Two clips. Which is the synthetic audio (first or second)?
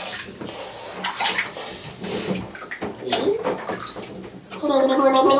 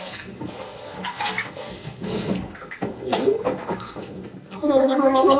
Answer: second